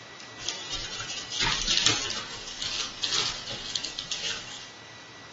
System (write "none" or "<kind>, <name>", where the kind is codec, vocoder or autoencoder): none